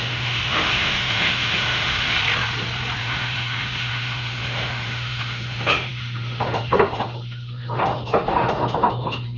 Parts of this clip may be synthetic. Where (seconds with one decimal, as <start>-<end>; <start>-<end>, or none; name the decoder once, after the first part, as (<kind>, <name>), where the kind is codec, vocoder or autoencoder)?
0.0-2.2 (autoencoder, DAC-VAE); 3.0-9.4